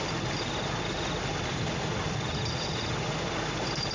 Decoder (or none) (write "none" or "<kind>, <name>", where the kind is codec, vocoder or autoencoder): none